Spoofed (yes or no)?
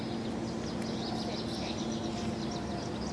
no